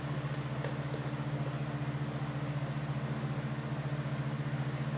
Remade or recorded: recorded